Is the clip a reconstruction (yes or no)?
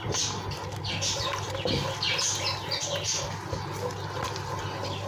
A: no